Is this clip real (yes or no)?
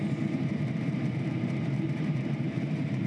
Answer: no